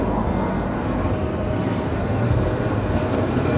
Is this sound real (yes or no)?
no